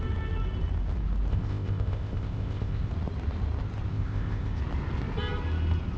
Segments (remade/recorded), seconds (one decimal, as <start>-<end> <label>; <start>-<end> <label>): 0.0-1.3 recorded; 1.3-2.9 remade; 2.9-3.9 recorded; 3.9-4.6 remade; 4.6-6.0 recorded